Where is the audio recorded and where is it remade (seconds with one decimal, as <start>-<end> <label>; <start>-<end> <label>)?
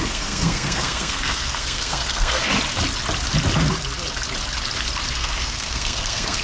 0.0-2.5 remade; 2.5-5.1 recorded; 5.1-6.4 remade